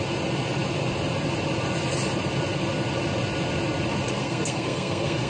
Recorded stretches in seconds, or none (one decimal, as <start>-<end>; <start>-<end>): 0.0-4.2